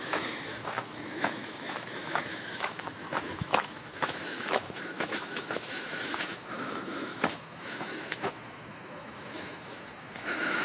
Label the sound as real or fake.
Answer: fake